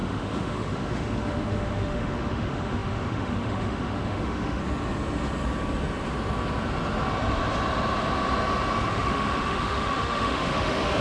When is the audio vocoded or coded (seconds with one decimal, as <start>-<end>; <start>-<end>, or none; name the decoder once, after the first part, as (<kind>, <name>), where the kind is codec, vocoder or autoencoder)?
0.0-4.6 (autoencoder, DAC-VAE); 8.9-11.0